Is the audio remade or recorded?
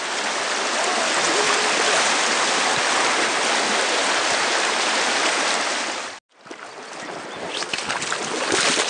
recorded